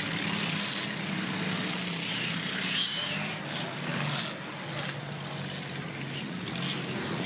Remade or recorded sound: recorded